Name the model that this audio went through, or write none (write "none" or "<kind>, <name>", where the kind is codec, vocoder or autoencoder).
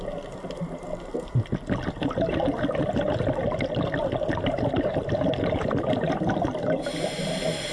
none